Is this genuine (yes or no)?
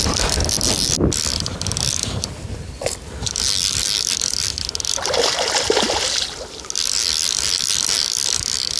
yes